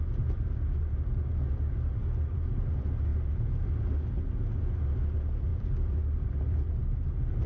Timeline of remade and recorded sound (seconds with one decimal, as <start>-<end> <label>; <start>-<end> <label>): 0.0-7.5 recorded

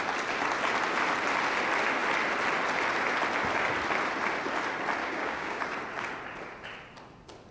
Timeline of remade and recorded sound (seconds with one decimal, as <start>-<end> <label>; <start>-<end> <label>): 0.0-5.0 recorded; 5.0-5.6 remade; 5.6-7.5 recorded

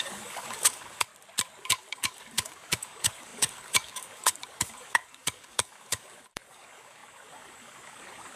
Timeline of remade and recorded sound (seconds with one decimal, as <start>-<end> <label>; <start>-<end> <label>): 0.0-1.1 remade; 1.1-1.6 recorded; 1.6-8.4 remade

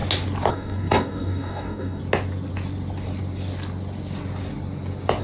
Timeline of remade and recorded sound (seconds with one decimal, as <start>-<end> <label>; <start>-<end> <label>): 0.0-0.5 recorded; 0.5-2.0 remade; 2.0-5.2 recorded

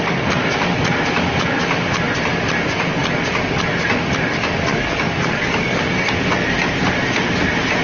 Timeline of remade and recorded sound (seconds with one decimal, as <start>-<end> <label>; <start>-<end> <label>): 0.0-4.7 recorded; 4.7-6.1 remade; 6.1-7.8 recorded

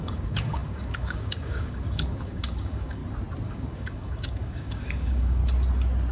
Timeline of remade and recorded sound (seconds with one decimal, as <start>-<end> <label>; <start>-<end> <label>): 0.0-3.0 remade; 3.0-3.5 recorded; 3.5-5.4 remade; 5.4-6.1 recorded